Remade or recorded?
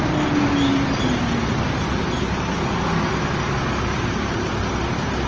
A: recorded